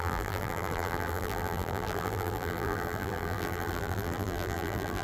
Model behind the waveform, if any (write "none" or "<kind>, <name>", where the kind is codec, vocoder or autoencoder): vocoder, BigVGAN v2